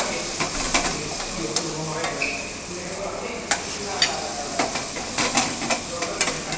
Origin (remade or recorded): recorded